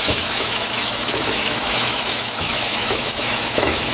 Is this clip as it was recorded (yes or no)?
no